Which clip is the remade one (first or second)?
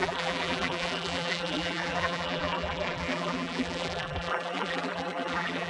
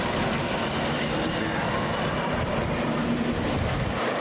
first